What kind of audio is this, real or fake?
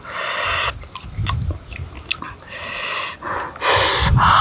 real